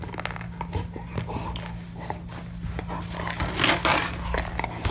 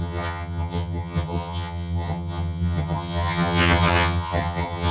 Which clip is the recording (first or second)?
first